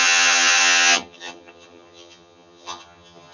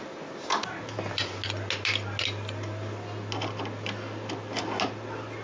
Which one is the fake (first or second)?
first